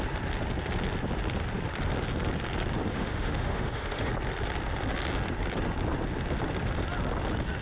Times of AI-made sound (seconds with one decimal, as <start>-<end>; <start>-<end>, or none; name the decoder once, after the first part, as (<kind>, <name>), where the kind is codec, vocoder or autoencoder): 2.9-4.1 (autoencoder, DAC-VAE)